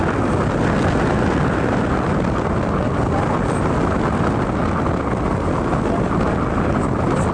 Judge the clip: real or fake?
real